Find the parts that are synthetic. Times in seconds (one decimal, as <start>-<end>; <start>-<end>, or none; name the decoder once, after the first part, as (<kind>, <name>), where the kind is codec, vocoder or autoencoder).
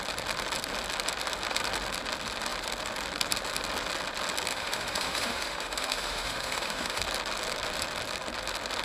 4.5-7.0 (autoencoder, DAC-VAE)